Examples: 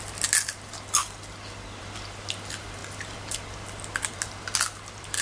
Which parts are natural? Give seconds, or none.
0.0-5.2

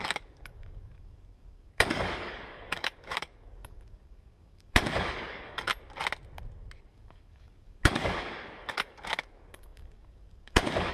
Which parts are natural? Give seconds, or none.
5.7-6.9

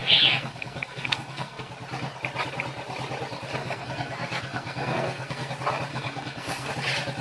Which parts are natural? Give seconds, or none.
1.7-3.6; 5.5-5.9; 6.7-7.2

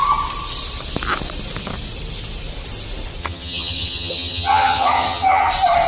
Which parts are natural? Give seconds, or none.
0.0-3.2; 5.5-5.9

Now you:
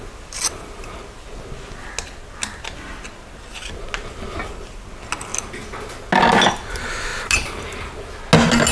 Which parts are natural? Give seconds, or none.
0.0-8.7

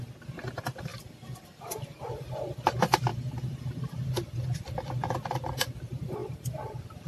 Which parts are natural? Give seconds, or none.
0.0-0.9; 1.6-3.1; 4.0-6.2